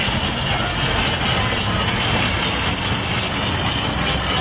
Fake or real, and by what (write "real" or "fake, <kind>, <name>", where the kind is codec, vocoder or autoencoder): real